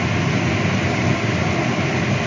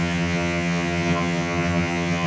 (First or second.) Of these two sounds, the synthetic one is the second